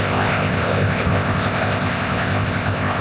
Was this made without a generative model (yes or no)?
no